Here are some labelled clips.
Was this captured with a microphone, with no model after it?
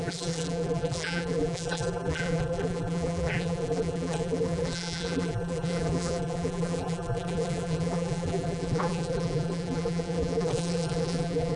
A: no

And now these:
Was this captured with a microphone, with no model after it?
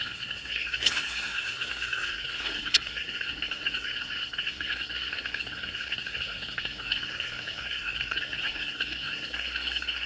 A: no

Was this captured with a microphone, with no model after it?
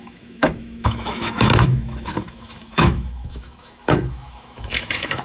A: no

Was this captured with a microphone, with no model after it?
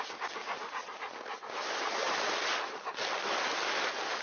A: yes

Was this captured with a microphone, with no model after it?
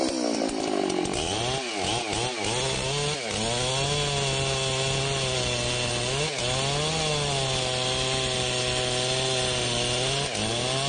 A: yes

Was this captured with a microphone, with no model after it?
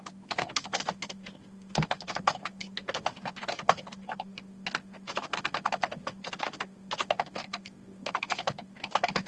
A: no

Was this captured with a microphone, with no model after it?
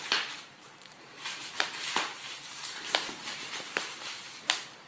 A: no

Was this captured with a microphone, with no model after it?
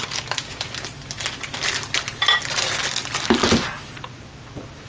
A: yes